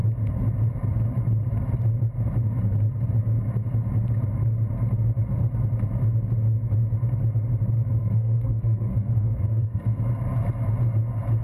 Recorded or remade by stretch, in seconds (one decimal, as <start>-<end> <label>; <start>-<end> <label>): 0.0-8.0 recorded; 8.0-10.0 remade; 10.0-11.4 recorded